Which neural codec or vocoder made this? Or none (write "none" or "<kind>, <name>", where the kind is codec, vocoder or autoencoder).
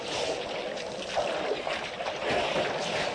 none